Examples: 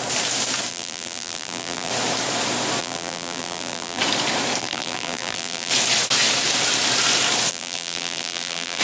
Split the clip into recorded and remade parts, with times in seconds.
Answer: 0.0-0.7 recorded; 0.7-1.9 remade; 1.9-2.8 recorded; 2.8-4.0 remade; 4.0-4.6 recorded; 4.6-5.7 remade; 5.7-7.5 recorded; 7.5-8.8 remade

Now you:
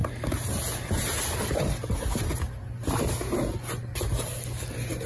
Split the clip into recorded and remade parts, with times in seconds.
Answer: 0.0-5.1 recorded